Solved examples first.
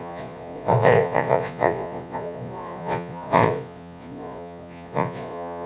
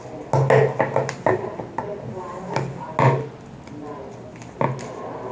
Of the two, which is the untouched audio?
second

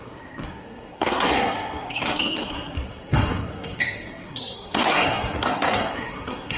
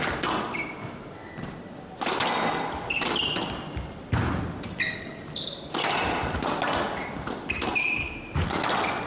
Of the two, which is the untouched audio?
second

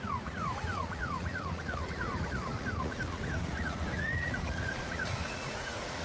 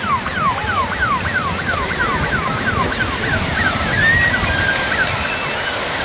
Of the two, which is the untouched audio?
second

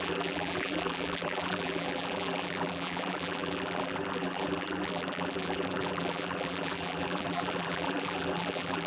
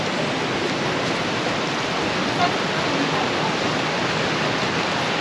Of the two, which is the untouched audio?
second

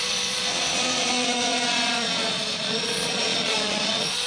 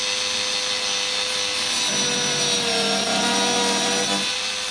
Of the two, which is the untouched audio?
second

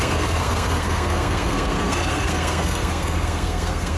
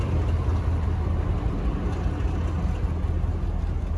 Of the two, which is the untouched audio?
second